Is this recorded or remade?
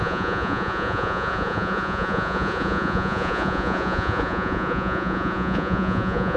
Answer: remade